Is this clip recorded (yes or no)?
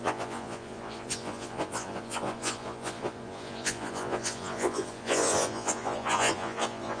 no